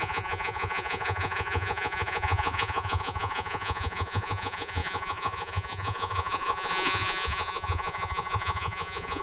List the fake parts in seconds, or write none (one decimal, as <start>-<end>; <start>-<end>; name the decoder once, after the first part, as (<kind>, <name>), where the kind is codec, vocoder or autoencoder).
0.0-9.2 (vocoder, Vocos)